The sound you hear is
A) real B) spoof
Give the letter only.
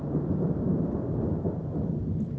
B